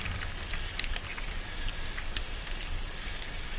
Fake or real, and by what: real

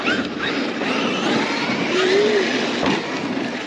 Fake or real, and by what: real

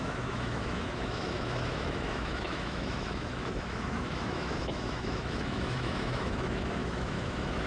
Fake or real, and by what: fake, autoencoder, DAC-VAE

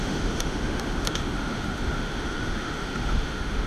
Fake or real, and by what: fake, autoencoder, DAC-VAE